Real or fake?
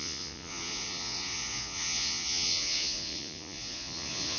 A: fake